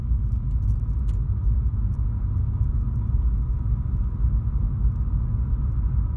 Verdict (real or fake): real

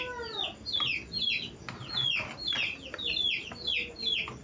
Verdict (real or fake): real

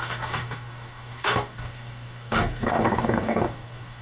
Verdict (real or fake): fake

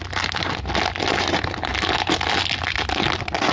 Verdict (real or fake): real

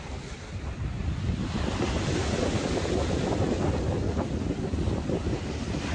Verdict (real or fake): real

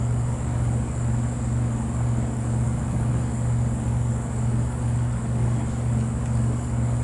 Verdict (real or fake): fake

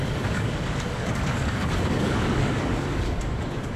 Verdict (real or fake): fake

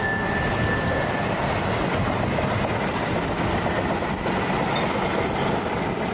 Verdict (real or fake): real